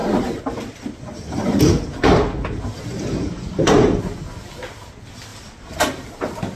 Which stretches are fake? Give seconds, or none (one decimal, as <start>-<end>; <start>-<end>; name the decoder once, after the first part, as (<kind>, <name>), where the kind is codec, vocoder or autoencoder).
0.0-4.0 (vocoder, BigVGAN v2); 5.3-6.6